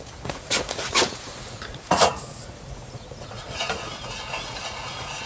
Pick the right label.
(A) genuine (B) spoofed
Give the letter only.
B